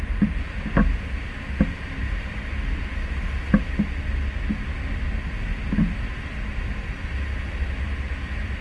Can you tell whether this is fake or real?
real